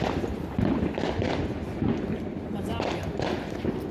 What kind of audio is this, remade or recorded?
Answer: recorded